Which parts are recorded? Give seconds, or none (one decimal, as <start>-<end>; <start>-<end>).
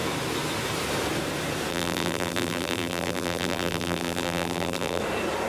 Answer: 0.0-1.7; 5.0-5.5